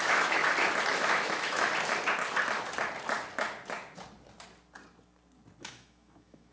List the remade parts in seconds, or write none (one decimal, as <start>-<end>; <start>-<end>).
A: 0.0-0.4; 0.9-1.7; 5.6-6.5